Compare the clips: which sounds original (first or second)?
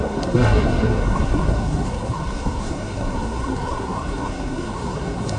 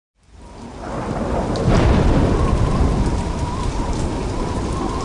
second